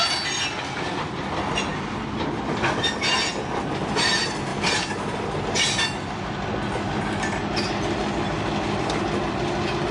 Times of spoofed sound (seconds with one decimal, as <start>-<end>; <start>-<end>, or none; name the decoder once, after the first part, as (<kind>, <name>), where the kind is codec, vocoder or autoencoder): none